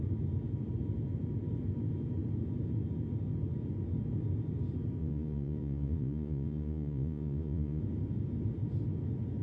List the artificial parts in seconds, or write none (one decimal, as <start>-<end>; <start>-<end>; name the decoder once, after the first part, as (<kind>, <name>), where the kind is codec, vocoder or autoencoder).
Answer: 5.0-7.8 (vocoder, Vocos)